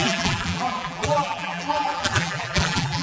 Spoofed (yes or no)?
yes